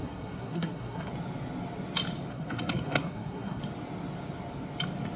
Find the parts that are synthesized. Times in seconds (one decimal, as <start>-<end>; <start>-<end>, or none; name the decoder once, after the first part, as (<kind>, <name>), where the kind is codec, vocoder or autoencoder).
0.0-1.1 (codec, SNAC); 2.3-3.6